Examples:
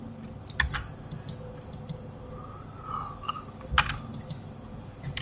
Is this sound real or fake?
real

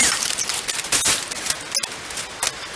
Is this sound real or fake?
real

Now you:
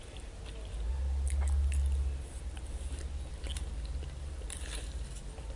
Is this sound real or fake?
real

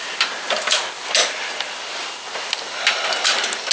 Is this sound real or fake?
real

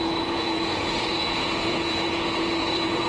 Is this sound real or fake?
fake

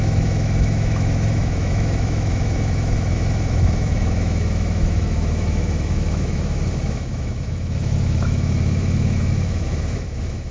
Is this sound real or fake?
fake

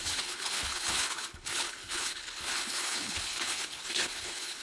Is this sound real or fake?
fake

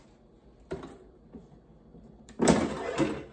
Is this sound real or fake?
real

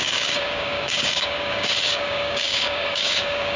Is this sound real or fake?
fake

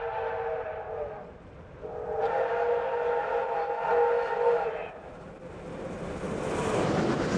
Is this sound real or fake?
real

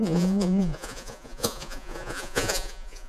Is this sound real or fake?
fake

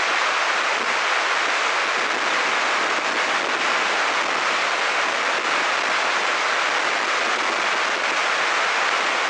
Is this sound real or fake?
real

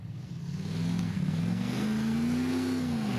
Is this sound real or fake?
fake